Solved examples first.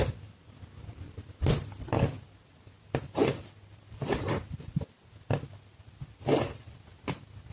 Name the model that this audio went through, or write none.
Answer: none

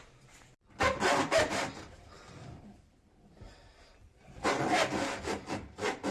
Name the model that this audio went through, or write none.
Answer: vocoder, BigVGAN v2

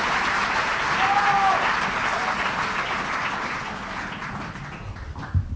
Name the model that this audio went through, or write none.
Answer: none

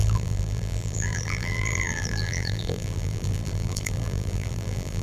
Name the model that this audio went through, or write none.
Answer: vocoder, BigVGAN v2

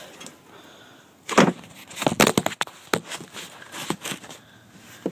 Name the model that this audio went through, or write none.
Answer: none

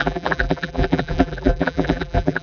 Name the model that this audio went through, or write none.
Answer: vocoder, BigVGAN v2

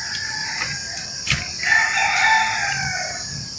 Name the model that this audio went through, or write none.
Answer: none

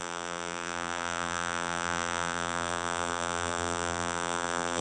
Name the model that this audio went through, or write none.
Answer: vocoder, BigVGAN v2